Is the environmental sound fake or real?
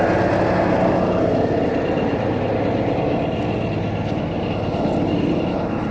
real